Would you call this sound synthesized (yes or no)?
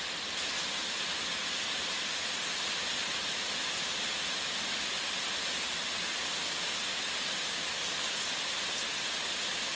no